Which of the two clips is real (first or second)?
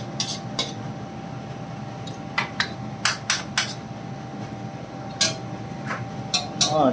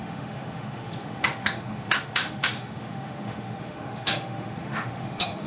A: first